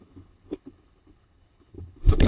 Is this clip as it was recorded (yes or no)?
no